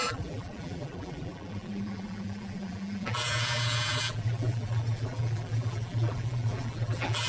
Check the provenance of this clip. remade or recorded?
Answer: remade